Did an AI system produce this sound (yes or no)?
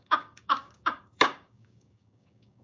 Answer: yes